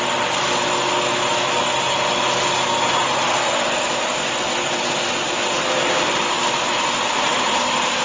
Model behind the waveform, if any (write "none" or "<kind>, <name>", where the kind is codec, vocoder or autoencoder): none